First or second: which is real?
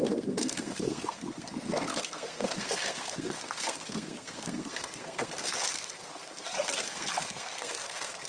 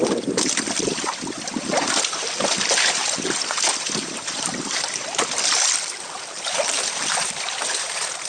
second